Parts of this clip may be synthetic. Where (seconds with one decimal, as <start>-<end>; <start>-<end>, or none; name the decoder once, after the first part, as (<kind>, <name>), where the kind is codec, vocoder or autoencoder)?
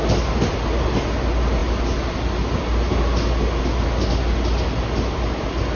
none